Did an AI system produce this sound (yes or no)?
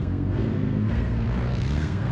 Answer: yes